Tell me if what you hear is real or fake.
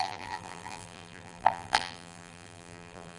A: fake